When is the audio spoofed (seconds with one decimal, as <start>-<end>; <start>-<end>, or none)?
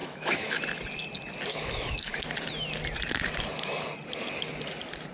0.0-0.6; 1.5-2.2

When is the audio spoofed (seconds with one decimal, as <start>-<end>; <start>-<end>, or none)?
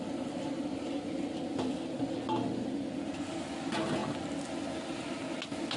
none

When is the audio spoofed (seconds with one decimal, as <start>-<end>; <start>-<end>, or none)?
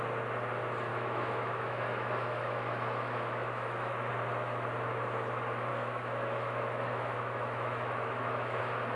0.9-4.1; 5.7-8.6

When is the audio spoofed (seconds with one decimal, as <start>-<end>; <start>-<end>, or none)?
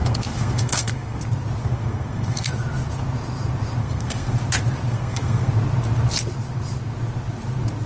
0.0-1.2; 1.6-2.5; 3.8-4.4; 4.9-5.5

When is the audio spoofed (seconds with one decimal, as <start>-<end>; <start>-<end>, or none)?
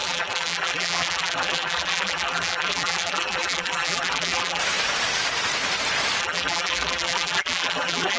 0.0-4.6; 6.2-8.2